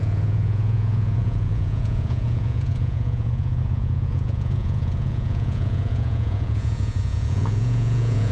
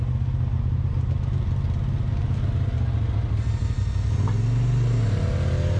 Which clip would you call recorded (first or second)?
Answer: second